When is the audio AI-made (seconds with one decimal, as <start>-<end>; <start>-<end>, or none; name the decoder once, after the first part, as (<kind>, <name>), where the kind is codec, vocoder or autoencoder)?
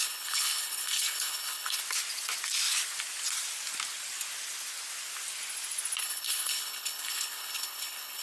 0.0-1.8 (codec, HILCodec); 6.0-8.2